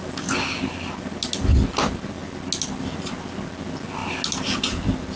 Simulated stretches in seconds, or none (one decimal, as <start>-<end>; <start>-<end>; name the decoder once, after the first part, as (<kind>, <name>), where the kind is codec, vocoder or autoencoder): none